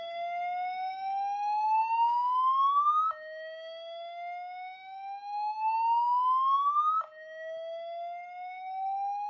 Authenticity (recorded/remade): recorded